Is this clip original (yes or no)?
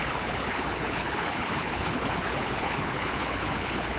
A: no